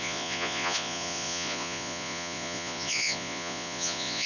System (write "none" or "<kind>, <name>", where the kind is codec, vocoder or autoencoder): vocoder, Vocos